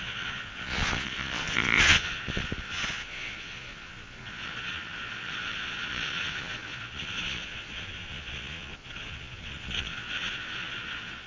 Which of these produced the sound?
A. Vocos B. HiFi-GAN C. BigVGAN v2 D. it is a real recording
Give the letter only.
A